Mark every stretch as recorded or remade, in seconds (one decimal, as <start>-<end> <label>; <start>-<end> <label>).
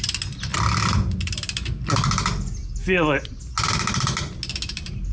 0.0-5.1 recorded